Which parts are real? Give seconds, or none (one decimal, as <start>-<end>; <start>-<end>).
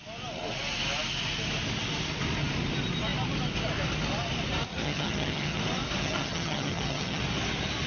0.0-4.7; 5.6-6.0; 7.2-7.9